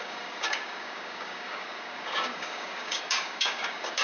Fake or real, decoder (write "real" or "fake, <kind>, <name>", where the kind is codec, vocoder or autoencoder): fake, codec, DAC